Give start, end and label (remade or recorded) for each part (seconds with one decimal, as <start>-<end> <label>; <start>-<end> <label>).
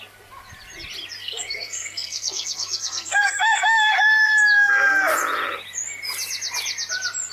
0.0-1.2 recorded; 1.2-4.4 remade; 4.4-7.3 recorded